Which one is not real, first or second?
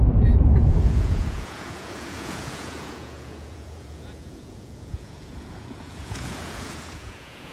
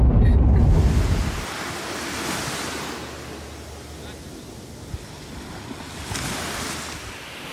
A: first